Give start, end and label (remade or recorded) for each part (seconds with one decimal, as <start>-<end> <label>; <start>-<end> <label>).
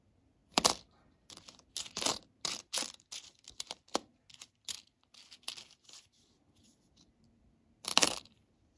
0.0-8.8 recorded